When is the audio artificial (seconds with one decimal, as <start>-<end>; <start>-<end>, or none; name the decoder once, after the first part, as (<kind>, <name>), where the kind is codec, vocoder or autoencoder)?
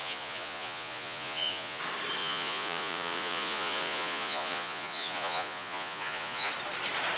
0.0-1.8 (vocoder, Vocos); 2.2-6.5